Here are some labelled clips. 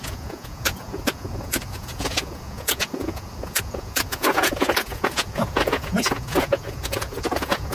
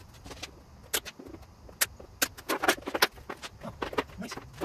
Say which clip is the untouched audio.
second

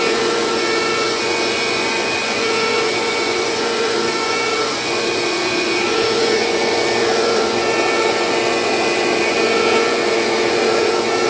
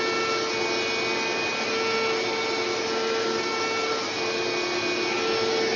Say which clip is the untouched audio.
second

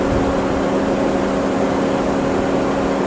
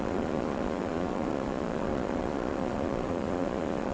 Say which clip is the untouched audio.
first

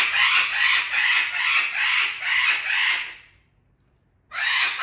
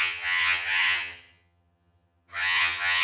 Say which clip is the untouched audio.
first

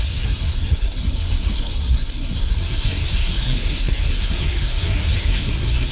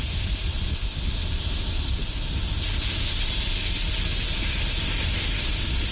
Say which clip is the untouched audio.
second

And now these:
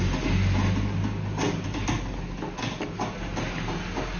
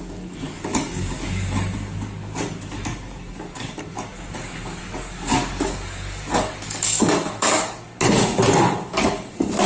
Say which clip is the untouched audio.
first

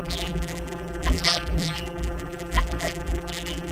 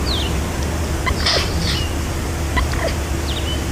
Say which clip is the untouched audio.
second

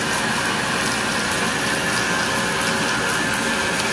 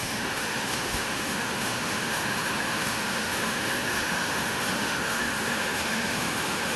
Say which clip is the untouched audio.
first